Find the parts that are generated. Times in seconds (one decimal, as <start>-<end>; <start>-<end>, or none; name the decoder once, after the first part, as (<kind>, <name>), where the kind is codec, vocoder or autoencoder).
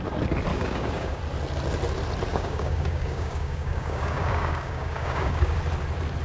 0.5-1.2 (codec, DAC); 2.3-5.6